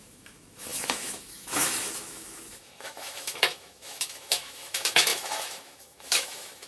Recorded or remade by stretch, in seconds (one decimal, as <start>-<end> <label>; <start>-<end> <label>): 0.0-6.7 remade